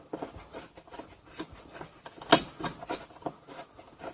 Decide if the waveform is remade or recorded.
recorded